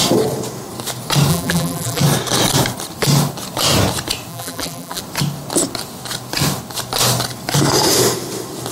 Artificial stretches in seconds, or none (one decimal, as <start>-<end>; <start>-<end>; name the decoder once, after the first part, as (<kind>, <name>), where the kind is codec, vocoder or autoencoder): 1.3-2.0 (vocoder, BigVGAN v2); 4.3-5.0